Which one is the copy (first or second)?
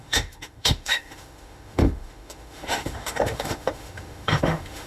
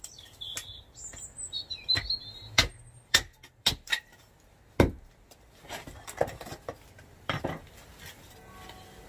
first